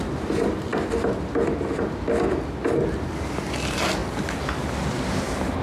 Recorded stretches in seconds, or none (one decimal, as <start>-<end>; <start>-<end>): 0.0-5.6